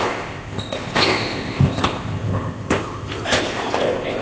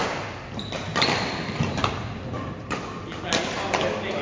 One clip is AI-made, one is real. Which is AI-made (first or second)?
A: first